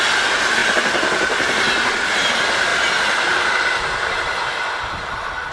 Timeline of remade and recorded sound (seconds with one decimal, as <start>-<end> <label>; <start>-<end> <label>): 0.0-0.6 recorded; 0.6-2.3 remade; 2.3-5.5 recorded